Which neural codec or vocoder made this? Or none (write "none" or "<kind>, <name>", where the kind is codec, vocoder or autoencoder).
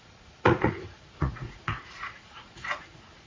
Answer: vocoder, Vocos